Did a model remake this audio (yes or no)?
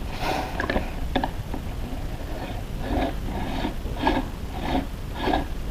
no